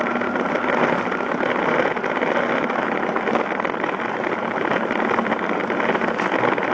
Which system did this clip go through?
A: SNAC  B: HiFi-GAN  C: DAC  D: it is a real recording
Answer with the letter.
D